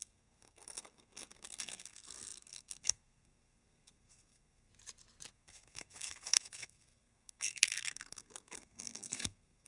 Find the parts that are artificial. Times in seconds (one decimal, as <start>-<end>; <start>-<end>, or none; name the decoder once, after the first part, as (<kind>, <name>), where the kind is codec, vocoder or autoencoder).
0.0-4.7 (codec, SNAC); 5.3-9.7